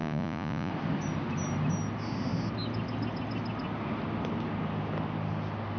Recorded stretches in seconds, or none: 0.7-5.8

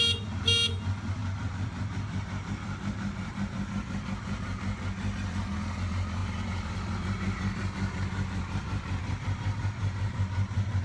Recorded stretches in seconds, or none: 0.0-1.2; 3.7-6.2

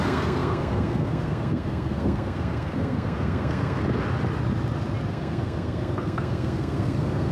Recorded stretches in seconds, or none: 3.8-5.1